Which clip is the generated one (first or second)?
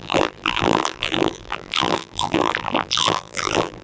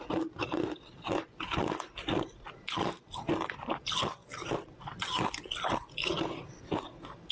first